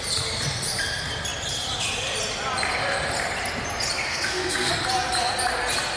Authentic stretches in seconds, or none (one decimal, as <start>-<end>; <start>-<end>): 0.0-4.1; 4.7-6.0